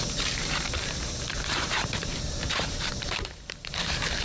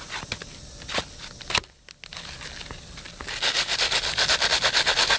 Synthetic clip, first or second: first